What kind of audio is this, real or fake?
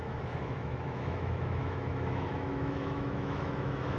fake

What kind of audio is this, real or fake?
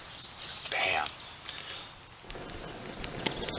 real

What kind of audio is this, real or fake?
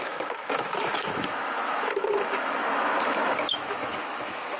fake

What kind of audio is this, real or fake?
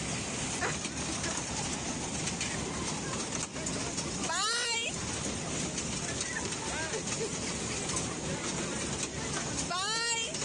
real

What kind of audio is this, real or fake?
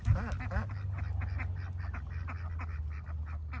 real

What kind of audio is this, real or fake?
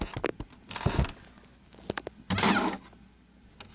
real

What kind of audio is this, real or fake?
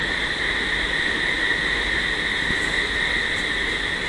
real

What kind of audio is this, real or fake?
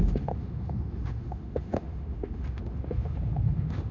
fake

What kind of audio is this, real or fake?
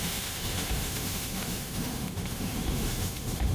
fake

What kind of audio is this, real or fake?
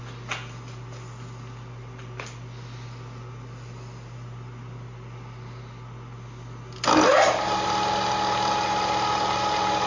real